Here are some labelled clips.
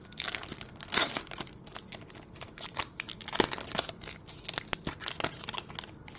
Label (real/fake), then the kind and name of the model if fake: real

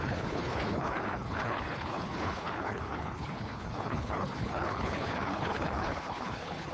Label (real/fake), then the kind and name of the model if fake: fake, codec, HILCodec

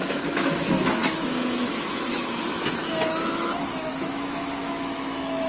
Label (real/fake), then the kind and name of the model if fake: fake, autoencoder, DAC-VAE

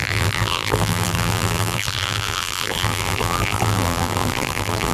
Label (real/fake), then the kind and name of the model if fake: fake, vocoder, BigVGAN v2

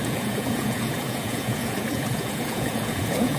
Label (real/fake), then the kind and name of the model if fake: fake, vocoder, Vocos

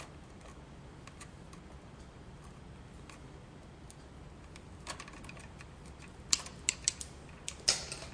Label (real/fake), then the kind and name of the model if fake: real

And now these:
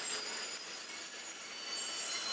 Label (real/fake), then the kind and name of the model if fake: real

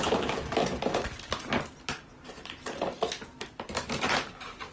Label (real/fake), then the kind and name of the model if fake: real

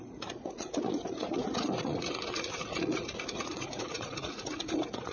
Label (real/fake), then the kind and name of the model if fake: fake, vocoder, Vocos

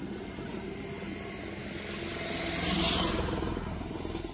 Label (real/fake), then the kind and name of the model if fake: real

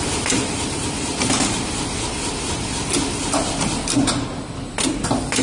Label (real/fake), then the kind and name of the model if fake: real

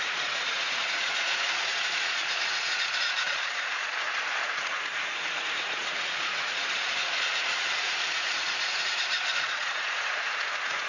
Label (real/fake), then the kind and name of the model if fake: fake, vocoder, Vocos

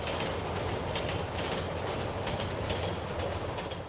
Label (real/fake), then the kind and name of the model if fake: real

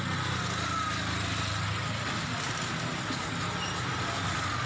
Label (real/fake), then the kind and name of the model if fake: real